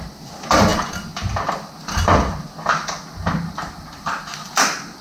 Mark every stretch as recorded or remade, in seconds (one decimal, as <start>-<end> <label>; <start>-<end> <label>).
0.0-0.7 remade; 0.7-3.4 recorded; 3.4-5.0 remade